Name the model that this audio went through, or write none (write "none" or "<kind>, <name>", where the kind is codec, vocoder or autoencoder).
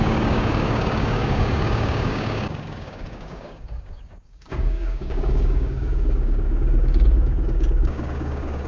codec, DAC